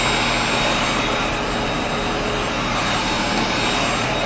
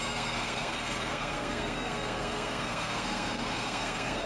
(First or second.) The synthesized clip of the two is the second